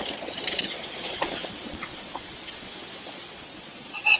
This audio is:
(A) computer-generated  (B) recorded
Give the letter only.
A